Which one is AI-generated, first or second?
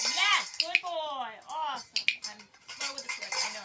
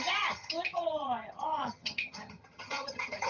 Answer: second